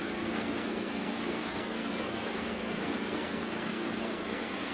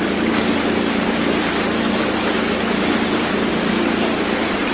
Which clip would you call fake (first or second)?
first